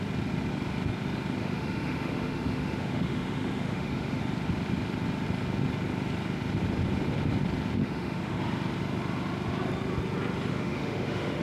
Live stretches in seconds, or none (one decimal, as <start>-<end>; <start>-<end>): 0.0-1.4; 4.2-7.8; 8.4-10.5